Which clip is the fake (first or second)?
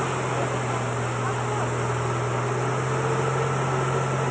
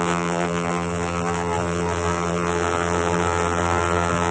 second